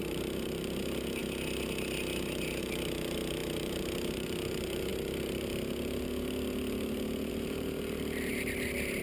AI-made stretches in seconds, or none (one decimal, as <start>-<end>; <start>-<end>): 0.0-1.2; 2.6-8.3